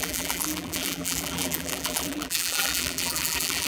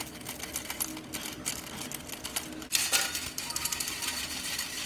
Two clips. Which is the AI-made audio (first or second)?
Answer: first